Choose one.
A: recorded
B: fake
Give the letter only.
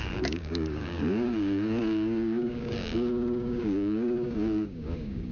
B